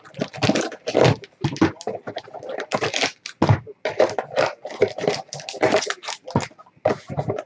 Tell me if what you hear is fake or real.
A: real